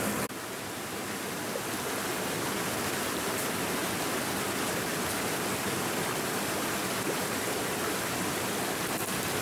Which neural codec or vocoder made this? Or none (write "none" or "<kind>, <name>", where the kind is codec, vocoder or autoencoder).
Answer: none